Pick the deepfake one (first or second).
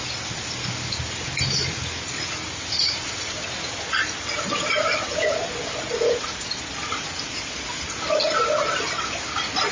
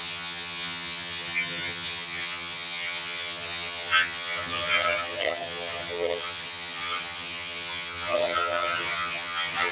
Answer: second